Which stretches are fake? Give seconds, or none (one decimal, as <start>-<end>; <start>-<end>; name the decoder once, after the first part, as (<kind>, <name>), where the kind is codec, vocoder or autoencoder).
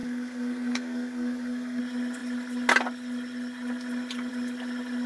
0.0-1.8 (codec, SNAC)